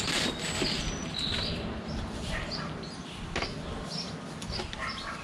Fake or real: real